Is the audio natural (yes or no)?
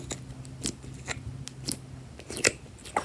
yes